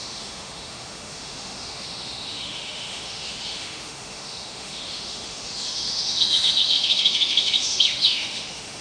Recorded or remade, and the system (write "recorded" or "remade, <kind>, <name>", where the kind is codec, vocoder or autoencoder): remade, autoencoder, DAC-VAE